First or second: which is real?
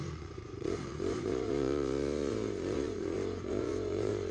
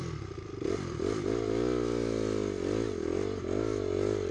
second